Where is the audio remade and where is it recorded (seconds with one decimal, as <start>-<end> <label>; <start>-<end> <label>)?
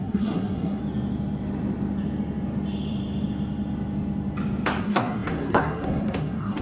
0.0-0.8 remade; 0.8-4.8 recorded; 4.8-6.6 remade